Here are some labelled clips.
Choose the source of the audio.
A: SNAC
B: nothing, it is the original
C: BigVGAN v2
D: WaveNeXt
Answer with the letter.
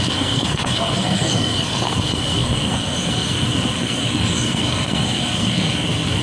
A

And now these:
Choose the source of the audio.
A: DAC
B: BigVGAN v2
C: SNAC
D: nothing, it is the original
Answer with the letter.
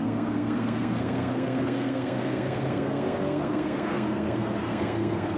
C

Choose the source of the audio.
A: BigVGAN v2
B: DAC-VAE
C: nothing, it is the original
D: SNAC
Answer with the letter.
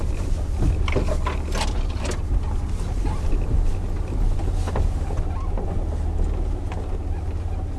C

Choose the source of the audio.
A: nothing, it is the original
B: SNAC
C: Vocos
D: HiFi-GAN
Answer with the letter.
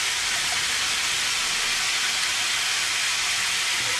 A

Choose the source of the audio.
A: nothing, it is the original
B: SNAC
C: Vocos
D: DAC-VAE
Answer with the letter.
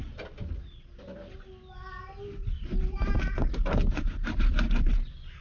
A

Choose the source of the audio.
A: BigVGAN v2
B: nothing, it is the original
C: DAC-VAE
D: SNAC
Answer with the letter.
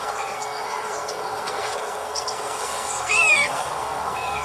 D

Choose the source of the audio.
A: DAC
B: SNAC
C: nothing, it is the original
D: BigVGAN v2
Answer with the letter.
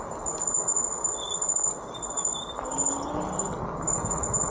C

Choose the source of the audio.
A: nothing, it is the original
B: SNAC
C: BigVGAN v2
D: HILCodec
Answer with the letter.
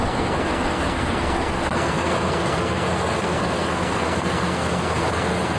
B